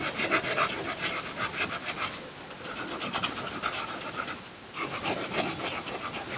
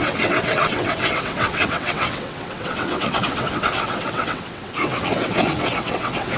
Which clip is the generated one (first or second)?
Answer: second